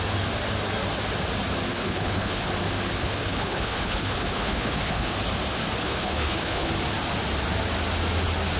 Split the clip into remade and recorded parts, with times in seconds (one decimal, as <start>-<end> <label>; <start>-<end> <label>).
0.0-1.7 recorded; 1.7-2.5 remade; 2.5-3.0 recorded; 3.0-5.1 remade; 5.1-5.8 recorded; 5.8-6.7 remade; 6.7-8.6 recorded